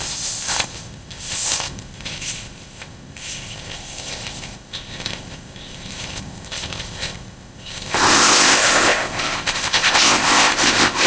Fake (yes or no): yes